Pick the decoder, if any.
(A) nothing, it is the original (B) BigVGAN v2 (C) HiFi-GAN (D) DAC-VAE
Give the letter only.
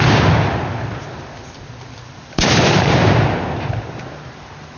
B